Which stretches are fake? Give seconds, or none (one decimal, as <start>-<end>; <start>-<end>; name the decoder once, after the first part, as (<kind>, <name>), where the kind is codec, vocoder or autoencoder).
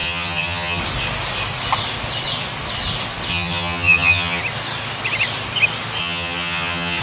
0.0-0.8 (vocoder, HiFi-GAN); 3.3-4.4; 6.0-7.0